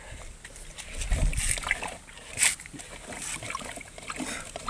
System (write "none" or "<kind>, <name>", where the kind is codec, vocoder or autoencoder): none